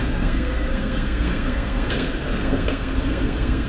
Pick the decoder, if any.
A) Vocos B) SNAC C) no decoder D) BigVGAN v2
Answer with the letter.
B